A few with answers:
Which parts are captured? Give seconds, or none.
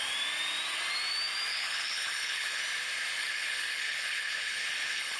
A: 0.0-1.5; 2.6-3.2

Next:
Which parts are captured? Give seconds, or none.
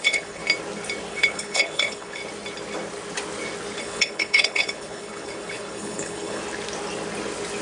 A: 0.4-1.1; 2.2-3.8; 6.4-7.6